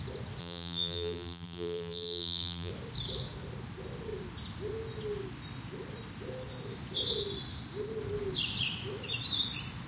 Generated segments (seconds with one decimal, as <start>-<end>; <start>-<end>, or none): 0.4-2.7